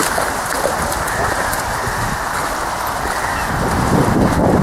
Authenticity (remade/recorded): recorded